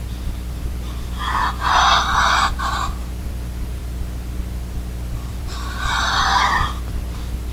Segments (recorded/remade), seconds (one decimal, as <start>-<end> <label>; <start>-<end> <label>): 0.0-3.8 remade; 3.8-5.3 recorded; 5.3-7.5 remade